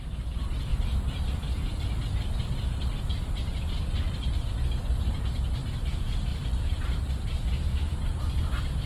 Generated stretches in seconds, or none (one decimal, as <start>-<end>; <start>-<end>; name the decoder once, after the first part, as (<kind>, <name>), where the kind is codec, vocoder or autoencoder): 0.7-4.6 (vocoder, BigVGAN v2); 6.3-7.1; 7.7-8.2